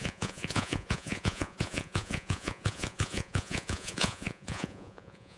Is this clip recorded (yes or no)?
no